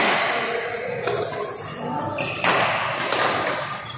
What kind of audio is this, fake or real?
real